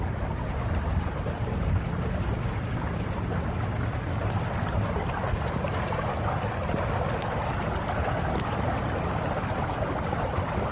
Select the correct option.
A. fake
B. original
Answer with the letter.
B